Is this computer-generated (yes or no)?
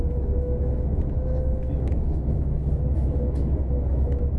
yes